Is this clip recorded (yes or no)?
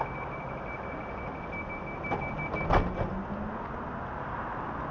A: yes